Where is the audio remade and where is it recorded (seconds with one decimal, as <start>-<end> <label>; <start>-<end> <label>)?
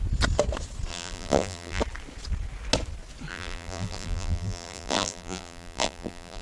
0.0-0.9 recorded; 0.9-1.8 remade; 1.8-3.3 recorded; 3.3-6.4 remade